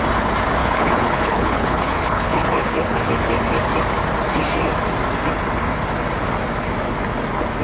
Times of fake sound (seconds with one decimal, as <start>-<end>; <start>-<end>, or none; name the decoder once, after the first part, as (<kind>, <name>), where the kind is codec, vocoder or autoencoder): 0.6-3.1 (codec, HILCodec)